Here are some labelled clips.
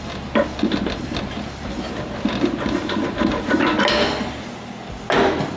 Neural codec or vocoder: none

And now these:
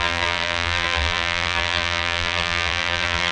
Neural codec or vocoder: vocoder, BigVGAN v2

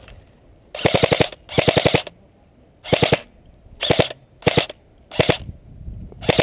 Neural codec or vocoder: none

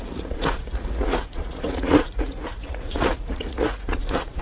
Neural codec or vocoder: vocoder, Vocos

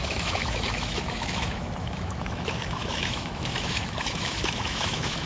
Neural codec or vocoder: autoencoder, DAC-VAE